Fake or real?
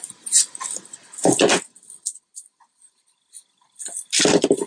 real